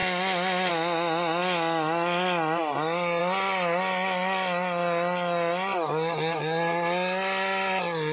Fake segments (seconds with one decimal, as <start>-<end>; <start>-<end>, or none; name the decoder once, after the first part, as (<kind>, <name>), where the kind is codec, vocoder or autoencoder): none